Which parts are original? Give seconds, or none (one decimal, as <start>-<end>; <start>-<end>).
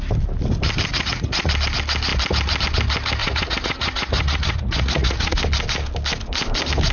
0.0-0.9; 1.5-3.2; 5.4-6.9